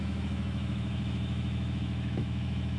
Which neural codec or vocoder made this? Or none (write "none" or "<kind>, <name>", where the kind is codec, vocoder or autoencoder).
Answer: autoencoder, DAC-VAE